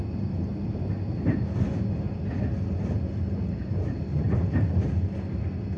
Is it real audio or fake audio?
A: real